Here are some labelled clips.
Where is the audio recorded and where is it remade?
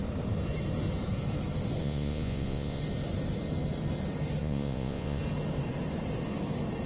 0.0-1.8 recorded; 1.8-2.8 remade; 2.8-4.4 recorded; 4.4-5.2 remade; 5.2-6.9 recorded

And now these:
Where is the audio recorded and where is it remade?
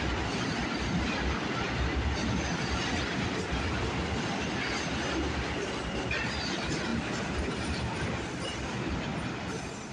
0.0-9.1 recorded; 9.1-9.9 remade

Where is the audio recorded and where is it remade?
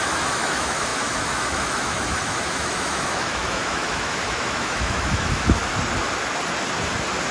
0.0-5.6 remade; 5.6-7.3 recorded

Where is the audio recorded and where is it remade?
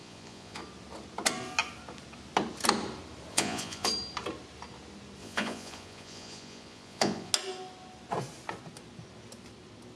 0.0-0.6 remade; 0.6-3.3 recorded; 3.3-3.9 remade; 3.9-5.2 recorded; 5.2-7.3 remade; 7.3-10.0 recorded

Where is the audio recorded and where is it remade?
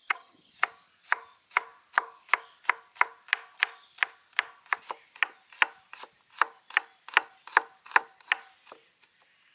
0.0-0.5 remade; 0.5-9.5 recorded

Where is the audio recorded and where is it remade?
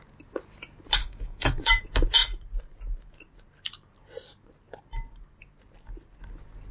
0.0-1.0 recorded; 1.0-1.8 remade; 1.8-6.7 recorded